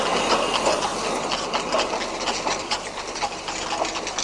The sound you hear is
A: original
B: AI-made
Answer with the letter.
A